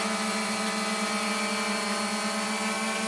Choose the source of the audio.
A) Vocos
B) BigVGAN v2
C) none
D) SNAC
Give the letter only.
C